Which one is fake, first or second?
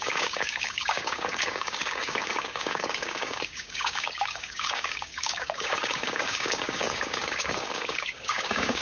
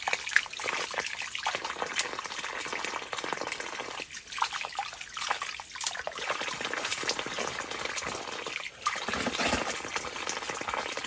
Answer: first